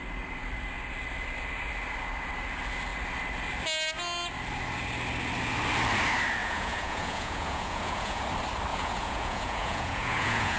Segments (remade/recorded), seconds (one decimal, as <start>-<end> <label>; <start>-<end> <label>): 0.0-6.4 recorded; 6.4-8.2 remade; 8.2-8.7 recorded; 8.7-10.6 remade